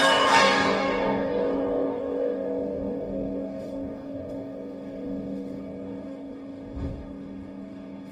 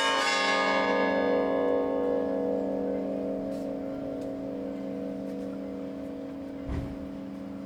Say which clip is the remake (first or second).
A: first